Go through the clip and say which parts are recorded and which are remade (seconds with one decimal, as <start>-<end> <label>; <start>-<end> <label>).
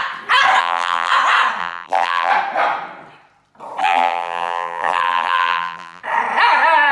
0.0-0.6 recorded; 0.6-1.1 remade; 1.1-1.6 recorded; 1.6-2.3 remade; 2.3-3.8 recorded; 3.8-6.0 remade; 6.0-6.9 recorded